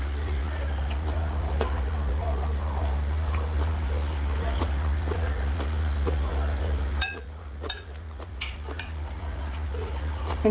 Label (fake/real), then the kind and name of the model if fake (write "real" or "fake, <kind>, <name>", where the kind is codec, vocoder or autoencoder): fake, vocoder, Vocos